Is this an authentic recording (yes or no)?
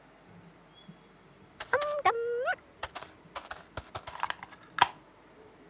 yes